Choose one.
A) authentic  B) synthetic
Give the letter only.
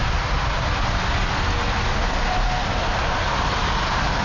A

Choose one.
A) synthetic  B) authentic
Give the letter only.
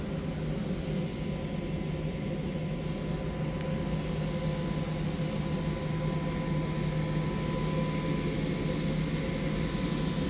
B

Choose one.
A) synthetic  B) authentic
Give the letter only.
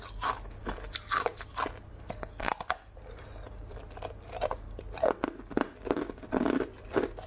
B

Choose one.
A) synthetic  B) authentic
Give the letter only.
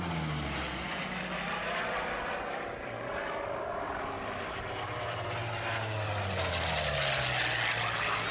B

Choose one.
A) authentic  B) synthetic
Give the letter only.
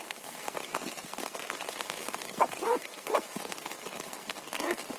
B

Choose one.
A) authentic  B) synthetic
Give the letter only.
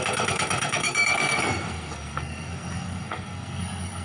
B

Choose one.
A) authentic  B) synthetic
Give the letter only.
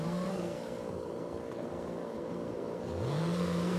B